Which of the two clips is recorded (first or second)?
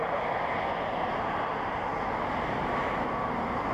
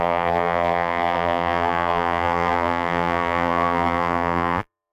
first